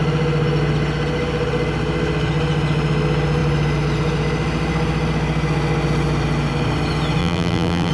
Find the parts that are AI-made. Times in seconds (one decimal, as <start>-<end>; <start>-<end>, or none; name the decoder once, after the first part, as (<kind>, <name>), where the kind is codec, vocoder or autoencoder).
7.2-7.9 (vocoder, BigVGAN v2)